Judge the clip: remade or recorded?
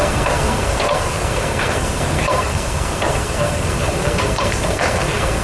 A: remade